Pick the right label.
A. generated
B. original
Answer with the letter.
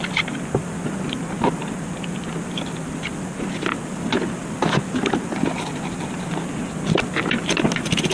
B